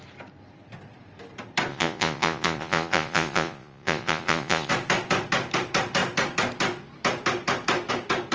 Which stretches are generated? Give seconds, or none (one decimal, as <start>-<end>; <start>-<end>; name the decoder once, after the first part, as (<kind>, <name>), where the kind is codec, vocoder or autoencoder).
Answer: 1.7-4.7 (vocoder, Vocos)